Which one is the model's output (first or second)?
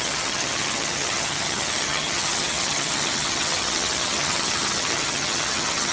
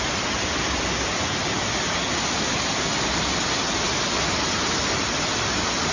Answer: first